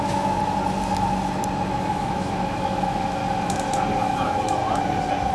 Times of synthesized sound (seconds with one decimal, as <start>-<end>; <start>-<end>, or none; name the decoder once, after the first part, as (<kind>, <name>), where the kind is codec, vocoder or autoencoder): 0.0-0.4 (autoencoder, DAC-VAE); 1.9-3.2; 4.0-4.6